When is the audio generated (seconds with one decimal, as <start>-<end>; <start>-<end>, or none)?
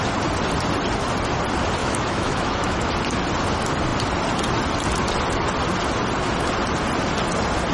1.8-2.9